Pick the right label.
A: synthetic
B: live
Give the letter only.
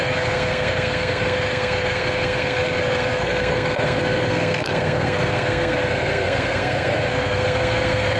A